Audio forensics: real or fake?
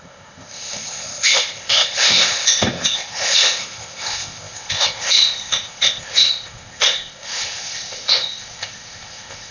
fake